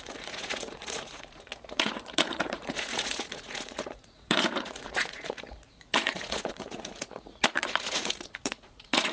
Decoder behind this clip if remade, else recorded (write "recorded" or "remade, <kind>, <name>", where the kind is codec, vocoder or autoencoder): remade, vocoder, Vocos